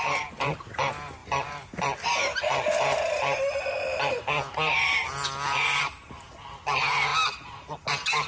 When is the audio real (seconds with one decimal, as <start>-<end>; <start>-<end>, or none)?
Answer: 0.0-8.3